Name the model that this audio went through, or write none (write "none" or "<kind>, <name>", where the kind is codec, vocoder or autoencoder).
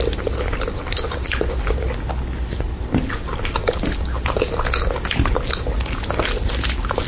none